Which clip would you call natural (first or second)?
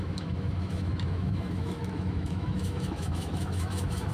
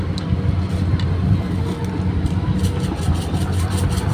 second